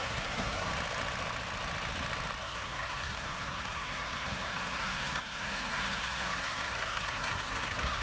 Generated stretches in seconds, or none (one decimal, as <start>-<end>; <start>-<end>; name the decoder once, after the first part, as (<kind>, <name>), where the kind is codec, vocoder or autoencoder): 0.0-0.7 (codec, SNAC); 2.4-8.0